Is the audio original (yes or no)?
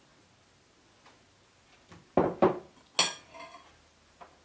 yes